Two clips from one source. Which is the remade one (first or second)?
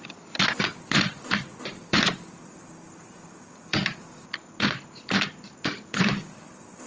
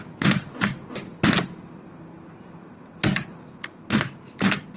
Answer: first